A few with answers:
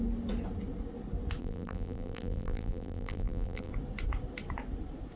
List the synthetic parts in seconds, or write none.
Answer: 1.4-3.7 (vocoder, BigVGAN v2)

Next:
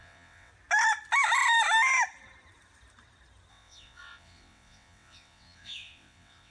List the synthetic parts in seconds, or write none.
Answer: 0.0-0.5 (vocoder, WaveNeXt); 3.5-6.5

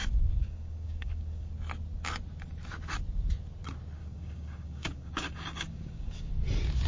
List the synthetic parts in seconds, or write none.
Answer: 0.4-1.5 (codec, DAC); 4.0-6.3

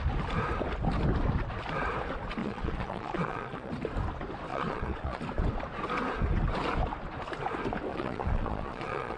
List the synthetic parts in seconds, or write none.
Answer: 2.4-3.7 (vocoder, Vocos); 4.5-5.2; 7.9-9.2

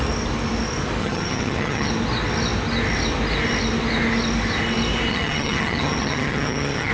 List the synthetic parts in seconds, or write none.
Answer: 1.0-1.9 (vocoder, HiFi-GAN); 5.1-6.9